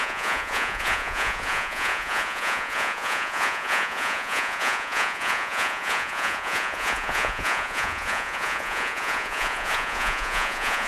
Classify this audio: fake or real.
fake